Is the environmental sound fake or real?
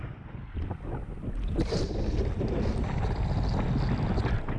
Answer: real